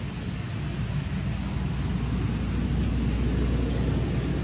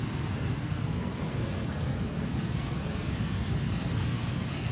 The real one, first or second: first